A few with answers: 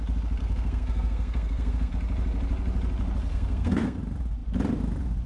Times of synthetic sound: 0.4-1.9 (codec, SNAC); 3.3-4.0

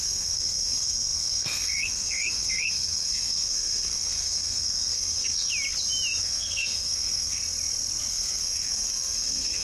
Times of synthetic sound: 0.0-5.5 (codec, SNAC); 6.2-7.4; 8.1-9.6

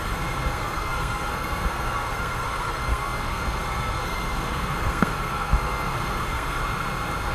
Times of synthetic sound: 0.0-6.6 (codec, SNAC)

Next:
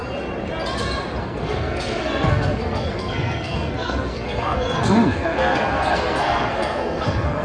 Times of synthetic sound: 1.2-7.4 (codec, SNAC)

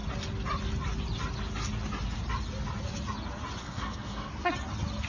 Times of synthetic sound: 3.6-4.3 (codec, SNAC)

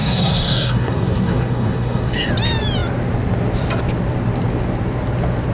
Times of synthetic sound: 0.0-2.3 (codec, SNAC)

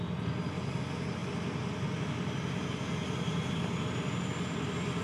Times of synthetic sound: none